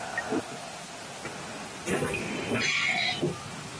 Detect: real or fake real